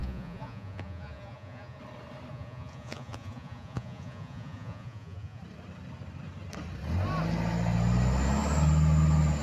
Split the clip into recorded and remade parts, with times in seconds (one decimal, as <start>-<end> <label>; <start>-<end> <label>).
0.0-1.8 remade; 1.8-2.3 recorded; 2.3-5.4 remade; 5.4-9.4 recorded